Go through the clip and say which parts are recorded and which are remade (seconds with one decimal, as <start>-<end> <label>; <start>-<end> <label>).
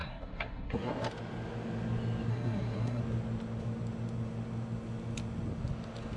0.0-0.9 remade; 0.9-2.3 recorded; 2.3-3.0 remade; 3.0-6.2 recorded